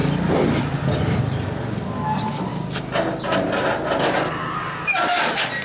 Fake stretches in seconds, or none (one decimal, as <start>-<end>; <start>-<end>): none